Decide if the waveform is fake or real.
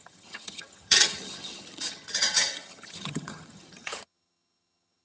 fake